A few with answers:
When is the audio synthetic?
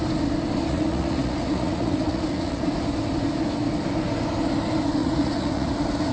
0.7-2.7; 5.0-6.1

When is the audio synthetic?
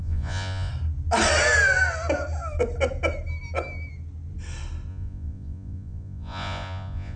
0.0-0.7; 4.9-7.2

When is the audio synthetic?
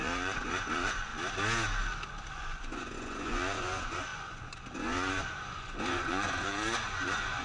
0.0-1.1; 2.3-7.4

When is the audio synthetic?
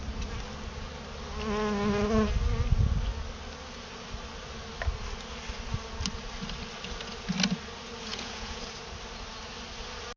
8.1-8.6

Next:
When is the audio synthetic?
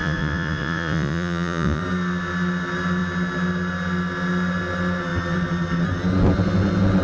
0.0-1.8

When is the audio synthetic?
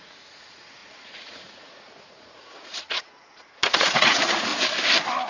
0.0-4.5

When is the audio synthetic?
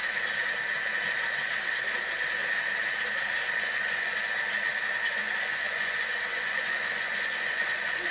3.6-4.2; 5.1-8.1